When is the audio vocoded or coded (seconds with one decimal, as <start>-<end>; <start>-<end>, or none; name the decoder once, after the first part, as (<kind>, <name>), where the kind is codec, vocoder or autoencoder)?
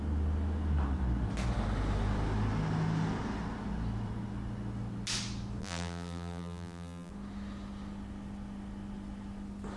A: 5.6-7.1 (vocoder, BigVGAN v2)